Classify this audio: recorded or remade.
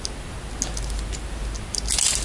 recorded